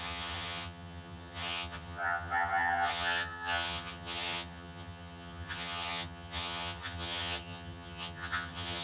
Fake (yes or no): yes